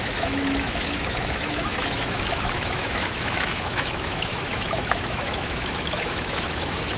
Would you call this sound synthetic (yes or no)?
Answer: yes